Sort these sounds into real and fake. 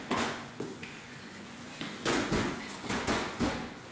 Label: fake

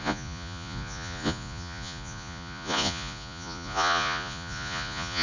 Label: fake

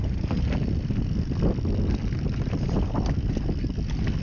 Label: real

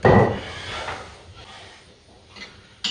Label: real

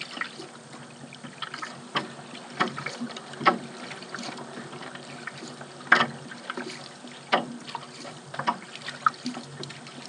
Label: real